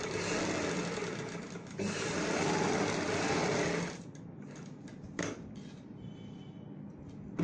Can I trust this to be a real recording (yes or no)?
yes